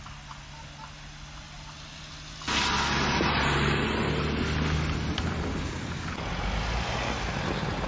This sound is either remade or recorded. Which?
recorded